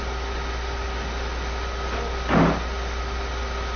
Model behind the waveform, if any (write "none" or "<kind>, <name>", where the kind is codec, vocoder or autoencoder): none